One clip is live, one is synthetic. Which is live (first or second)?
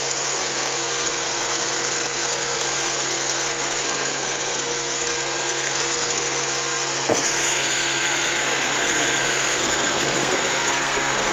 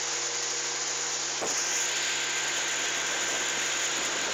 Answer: second